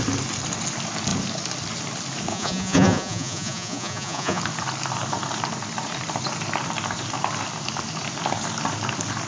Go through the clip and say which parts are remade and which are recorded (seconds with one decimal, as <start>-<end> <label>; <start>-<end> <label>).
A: 0.0-2.3 recorded; 2.3-4.4 remade; 4.4-9.3 recorded